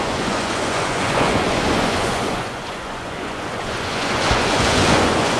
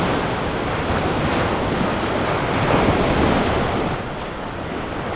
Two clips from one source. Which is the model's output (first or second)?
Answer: first